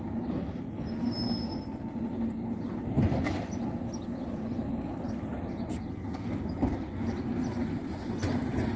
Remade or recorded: remade